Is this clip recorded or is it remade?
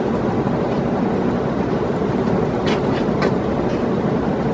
recorded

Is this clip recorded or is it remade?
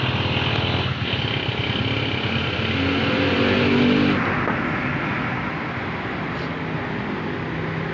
recorded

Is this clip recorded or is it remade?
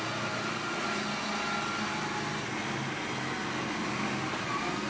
recorded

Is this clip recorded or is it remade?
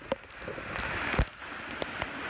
recorded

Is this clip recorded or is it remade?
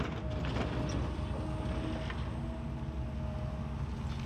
recorded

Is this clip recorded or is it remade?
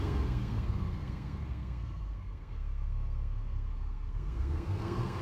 remade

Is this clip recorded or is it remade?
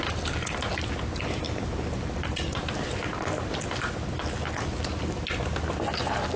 recorded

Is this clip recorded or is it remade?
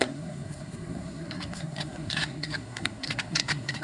remade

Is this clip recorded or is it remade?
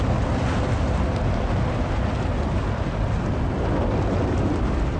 recorded